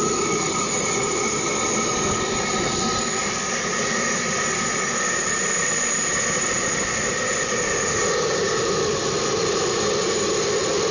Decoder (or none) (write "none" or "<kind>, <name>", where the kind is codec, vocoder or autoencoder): none